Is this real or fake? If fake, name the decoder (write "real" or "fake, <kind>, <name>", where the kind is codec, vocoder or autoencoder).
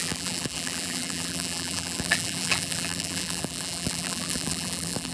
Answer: fake, vocoder, BigVGAN v2